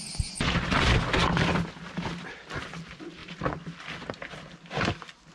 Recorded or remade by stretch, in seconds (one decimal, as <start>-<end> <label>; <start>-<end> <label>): 0.0-5.3 recorded

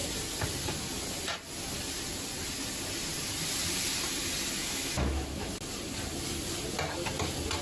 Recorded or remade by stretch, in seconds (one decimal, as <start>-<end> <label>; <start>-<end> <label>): 0.0-4.6 recorded; 4.6-5.6 remade; 5.6-7.6 recorded

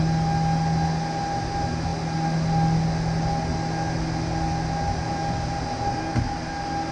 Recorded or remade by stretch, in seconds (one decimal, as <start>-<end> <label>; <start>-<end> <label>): 0.0-6.9 recorded

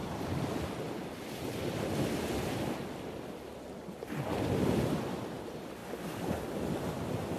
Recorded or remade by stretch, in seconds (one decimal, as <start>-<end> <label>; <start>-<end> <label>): 0.0-7.4 recorded

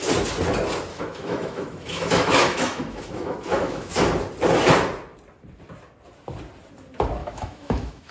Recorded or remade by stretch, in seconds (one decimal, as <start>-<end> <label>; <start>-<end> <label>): 0.0-0.9 recorded; 0.9-3.9 remade; 3.9-7.2 recorded; 7.2-8.1 remade

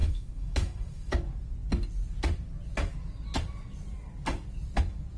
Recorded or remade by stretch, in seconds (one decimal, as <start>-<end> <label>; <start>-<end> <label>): 0.0-1.1 remade; 1.1-5.2 recorded